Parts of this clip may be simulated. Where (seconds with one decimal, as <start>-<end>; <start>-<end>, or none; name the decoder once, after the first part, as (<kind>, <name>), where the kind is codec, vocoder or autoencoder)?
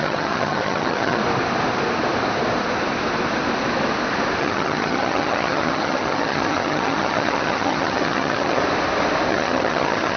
0.0-1.2 (vocoder, HiFi-GAN); 4.4-8.6; 9.3-10.2